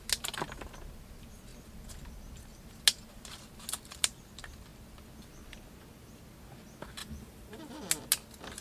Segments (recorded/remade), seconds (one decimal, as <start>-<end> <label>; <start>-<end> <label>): 0.0-7.0 recorded; 7.0-7.6 remade; 7.6-8.6 recorded